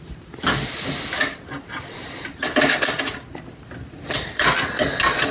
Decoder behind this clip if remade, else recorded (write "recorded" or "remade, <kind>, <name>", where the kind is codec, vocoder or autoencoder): recorded